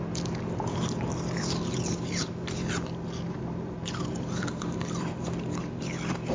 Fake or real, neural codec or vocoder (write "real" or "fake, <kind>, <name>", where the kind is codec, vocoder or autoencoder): fake, vocoder, BigVGAN v2